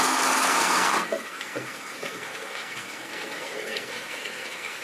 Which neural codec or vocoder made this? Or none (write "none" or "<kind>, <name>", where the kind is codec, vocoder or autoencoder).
codec, SNAC